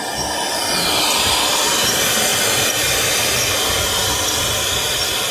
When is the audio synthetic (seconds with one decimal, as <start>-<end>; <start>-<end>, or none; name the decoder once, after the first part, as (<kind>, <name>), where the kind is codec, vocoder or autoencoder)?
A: none